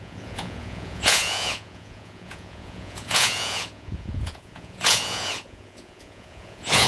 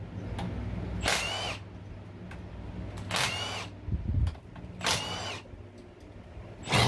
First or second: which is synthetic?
first